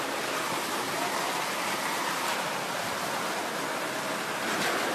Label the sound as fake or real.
real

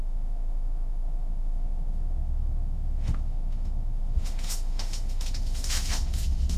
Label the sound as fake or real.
fake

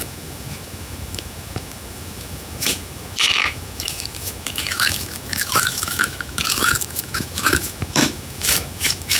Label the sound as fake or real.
fake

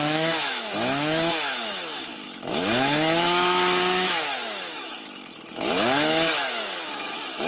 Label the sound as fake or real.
fake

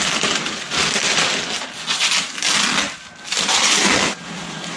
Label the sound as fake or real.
real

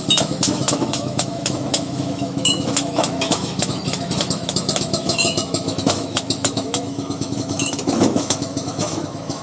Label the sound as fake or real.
fake